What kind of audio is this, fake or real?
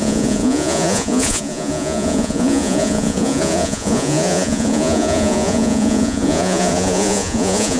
fake